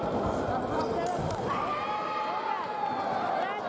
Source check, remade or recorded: recorded